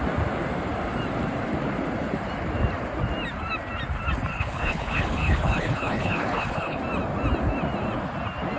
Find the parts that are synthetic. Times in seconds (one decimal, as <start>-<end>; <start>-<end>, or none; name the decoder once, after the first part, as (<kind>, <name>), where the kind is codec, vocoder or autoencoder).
4.3-6.8 (codec, HILCodec)